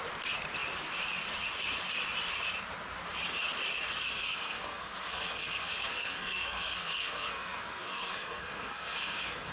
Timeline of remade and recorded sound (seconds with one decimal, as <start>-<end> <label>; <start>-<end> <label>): 0.0-4.0 recorded; 4.0-9.5 remade